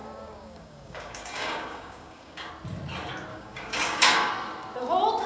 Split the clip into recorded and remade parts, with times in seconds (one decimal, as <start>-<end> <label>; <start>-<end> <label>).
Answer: 0.0-2.5 remade; 2.5-3.3 recorded; 3.3-4.3 remade; 4.3-5.3 recorded